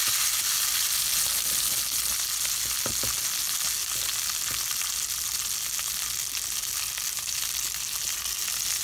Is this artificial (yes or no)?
no